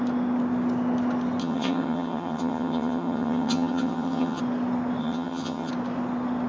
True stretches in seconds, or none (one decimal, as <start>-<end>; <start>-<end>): 0.0-1.4; 4.4-5.0; 5.7-6.5